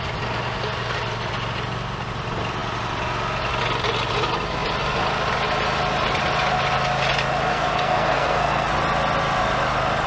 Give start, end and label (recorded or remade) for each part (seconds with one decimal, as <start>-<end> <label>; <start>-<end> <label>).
0.0-7.5 recorded; 7.5-8.7 remade; 8.7-10.1 recorded